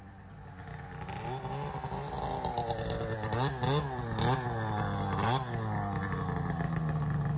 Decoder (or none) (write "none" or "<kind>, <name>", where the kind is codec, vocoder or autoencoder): none